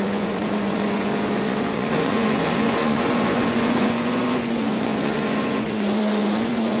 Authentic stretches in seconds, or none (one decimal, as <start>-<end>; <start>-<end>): none

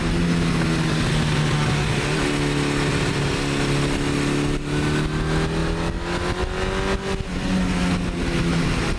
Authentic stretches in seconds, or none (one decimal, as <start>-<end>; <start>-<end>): 0.0-9.0